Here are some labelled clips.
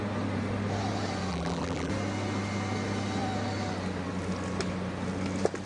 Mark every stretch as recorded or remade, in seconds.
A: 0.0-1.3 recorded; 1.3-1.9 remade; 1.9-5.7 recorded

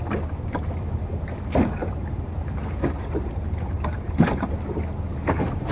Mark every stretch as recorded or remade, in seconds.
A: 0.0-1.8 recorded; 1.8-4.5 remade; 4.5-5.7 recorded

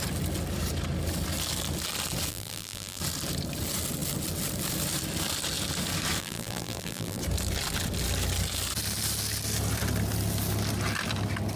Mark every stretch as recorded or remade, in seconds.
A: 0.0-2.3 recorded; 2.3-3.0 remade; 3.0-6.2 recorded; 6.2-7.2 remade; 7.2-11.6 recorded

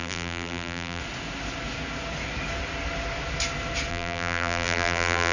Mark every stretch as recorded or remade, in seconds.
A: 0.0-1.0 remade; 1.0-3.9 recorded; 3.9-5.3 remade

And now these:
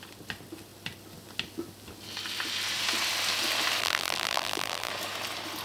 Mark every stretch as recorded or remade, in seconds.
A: 0.0-3.8 recorded; 3.8-4.9 remade; 4.9-5.6 recorded